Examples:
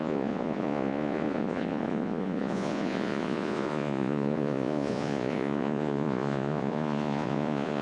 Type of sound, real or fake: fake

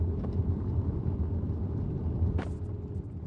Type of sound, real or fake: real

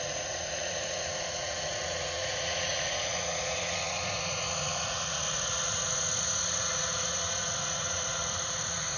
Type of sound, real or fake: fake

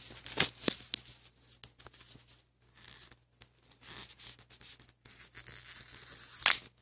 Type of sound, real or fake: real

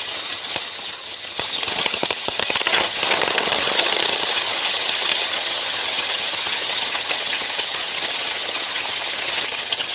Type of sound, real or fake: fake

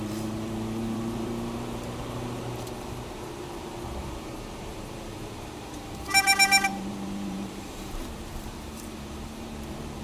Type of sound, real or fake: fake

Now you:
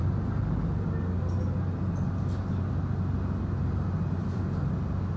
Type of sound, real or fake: real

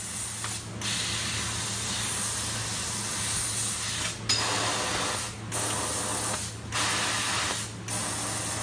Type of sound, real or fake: real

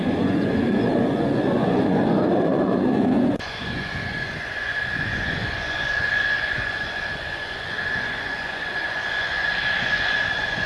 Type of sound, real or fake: fake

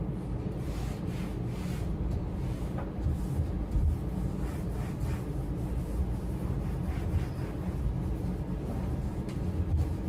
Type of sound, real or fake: real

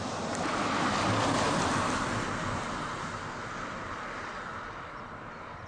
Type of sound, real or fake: real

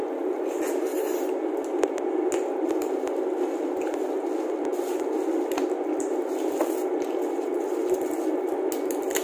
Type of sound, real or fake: real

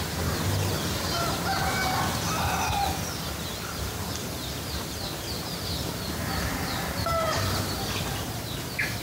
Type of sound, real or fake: real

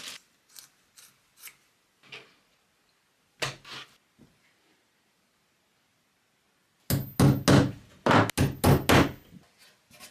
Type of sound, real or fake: real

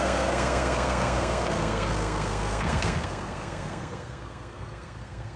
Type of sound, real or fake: fake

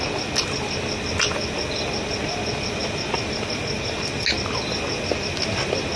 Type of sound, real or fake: real